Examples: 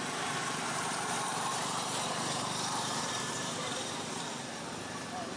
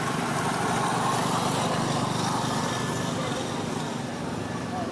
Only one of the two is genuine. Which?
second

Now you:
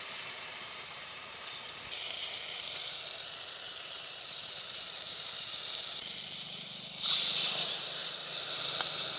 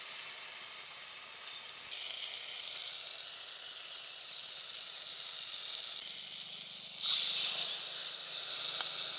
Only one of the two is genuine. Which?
second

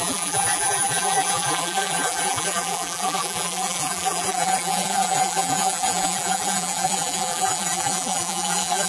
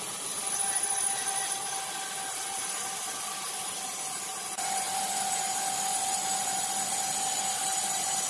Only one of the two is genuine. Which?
second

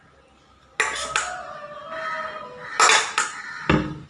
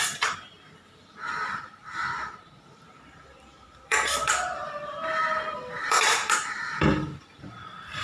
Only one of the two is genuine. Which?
first